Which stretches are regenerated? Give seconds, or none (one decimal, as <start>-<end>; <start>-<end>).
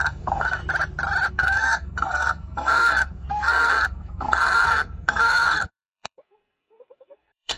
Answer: 0.0-0.6; 1.3-7.6